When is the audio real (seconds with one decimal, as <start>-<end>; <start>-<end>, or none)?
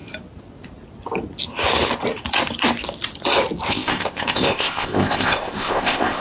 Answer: 0.0-3.7